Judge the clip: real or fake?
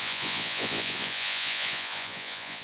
fake